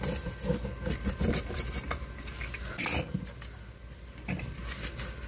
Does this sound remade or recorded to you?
recorded